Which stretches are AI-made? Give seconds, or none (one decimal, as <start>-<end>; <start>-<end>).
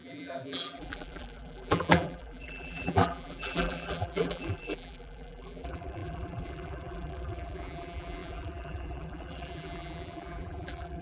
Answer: 0.0-11.0